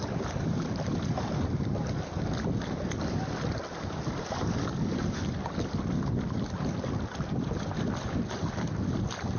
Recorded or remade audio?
recorded